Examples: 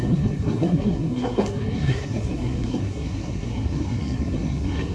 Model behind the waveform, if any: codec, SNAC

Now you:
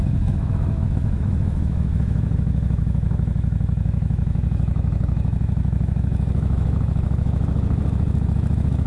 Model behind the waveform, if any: autoencoder, DAC-VAE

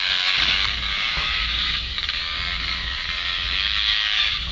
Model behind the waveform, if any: codec, DAC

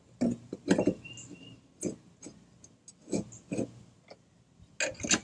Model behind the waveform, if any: none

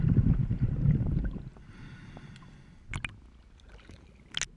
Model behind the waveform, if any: none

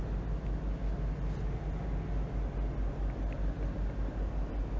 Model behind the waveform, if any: none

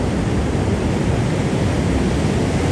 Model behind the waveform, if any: none